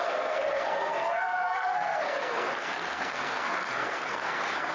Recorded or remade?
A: remade